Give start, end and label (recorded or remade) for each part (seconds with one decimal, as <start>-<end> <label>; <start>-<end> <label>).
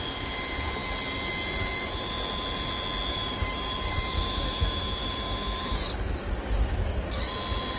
0.0-3.1 recorded; 3.1-5.7 remade; 5.7-7.8 recorded